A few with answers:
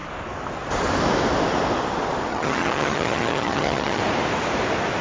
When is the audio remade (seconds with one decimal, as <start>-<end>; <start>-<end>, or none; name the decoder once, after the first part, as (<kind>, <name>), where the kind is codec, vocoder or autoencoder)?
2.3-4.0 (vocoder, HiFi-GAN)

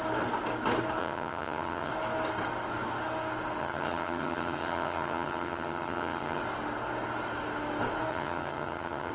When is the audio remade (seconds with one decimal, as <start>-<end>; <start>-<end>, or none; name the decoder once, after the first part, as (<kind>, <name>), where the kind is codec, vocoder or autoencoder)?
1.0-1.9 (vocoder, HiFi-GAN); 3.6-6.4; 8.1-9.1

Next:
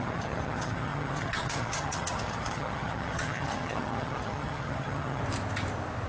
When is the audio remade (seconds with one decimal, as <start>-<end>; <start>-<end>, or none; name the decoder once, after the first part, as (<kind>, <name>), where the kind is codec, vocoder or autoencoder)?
0.0-5.2 (vocoder, HiFi-GAN)